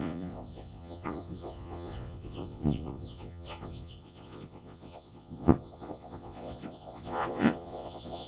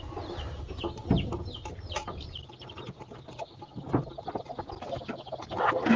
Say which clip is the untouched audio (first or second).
second